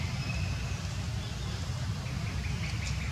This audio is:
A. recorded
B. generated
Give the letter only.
A